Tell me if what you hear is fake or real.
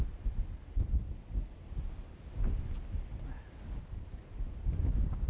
real